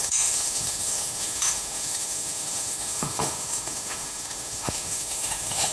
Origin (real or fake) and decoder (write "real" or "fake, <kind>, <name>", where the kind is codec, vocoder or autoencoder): fake, autoencoder, DAC-VAE